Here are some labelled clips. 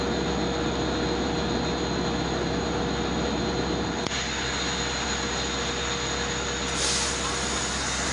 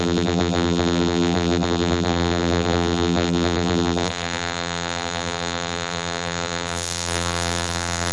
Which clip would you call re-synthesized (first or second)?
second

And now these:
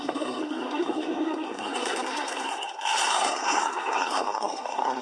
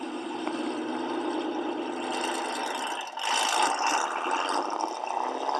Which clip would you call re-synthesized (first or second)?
first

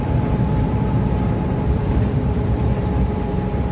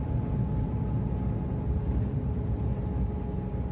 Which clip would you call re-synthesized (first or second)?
first